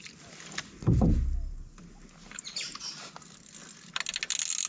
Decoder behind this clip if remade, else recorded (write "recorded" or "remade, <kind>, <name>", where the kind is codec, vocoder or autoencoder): recorded